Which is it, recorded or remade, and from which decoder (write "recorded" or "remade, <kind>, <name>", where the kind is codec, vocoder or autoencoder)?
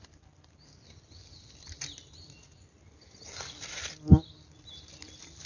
recorded